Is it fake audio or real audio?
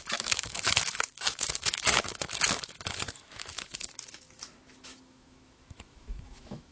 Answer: fake